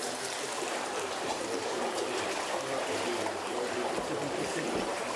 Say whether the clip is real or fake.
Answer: fake